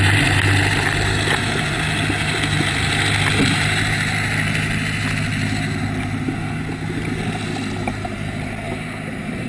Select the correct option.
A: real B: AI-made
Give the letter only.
A